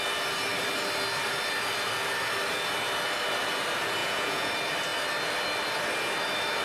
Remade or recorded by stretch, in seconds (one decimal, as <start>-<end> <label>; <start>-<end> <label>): 0.0-4.0 recorded; 4.0-4.5 remade; 4.5-6.6 recorded